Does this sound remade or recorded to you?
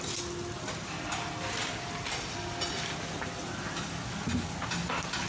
recorded